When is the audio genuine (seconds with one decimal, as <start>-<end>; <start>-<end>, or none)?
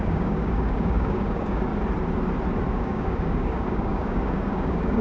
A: 1.7-2.7